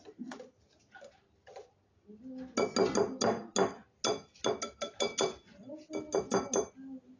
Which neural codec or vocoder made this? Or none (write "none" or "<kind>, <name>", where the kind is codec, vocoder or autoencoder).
none